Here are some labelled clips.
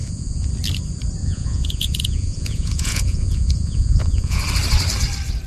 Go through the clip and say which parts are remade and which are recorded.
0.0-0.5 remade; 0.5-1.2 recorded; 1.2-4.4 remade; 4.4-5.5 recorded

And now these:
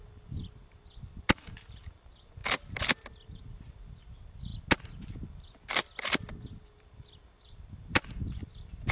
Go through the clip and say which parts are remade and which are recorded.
0.0-2.4 remade; 2.4-3.4 recorded; 3.4-4.5 remade; 4.5-6.5 recorded; 6.5-8.9 remade

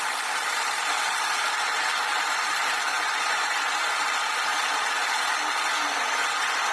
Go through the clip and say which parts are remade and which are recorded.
0.0-2.9 recorded; 2.9-3.7 remade; 3.7-6.7 recorded

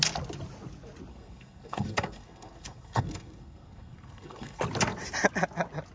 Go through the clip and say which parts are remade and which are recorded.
0.0-1.1 recorded; 1.1-4.6 remade; 4.6-5.9 recorded

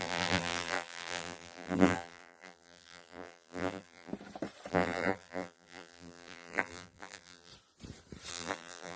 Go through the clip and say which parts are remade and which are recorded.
0.0-4.1 remade; 4.1-4.7 recorded; 4.7-7.5 remade; 7.5-8.3 recorded; 8.3-9.0 remade

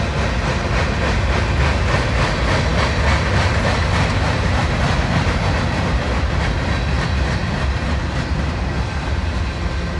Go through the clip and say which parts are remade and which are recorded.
0.0-7.4 recorded; 7.4-9.2 remade; 9.2-10.0 recorded

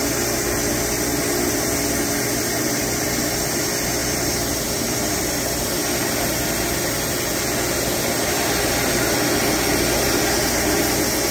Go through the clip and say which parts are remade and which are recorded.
0.0-1.1 recorded; 1.1-1.6 remade; 1.6-4.0 recorded; 4.0-5.6 remade; 5.6-11.3 recorded

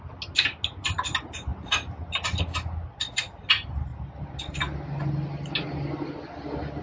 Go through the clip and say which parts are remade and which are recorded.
0.0-6.8 recorded